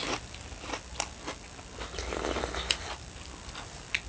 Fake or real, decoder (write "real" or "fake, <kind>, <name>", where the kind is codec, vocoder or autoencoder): real